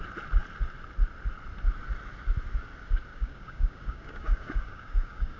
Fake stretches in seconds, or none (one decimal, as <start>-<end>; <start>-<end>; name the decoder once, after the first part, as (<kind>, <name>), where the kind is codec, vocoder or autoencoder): 3.1-5.4 (codec, DAC)